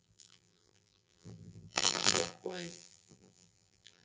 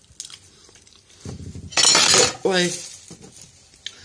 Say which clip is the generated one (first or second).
first